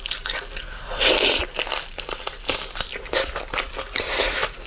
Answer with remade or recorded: recorded